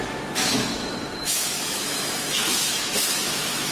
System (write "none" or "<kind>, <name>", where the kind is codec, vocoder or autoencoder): autoencoder, DAC-VAE